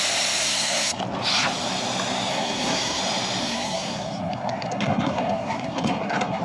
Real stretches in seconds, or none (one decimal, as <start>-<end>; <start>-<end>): 0.0-0.4; 1.0-2.3; 3.0-3.4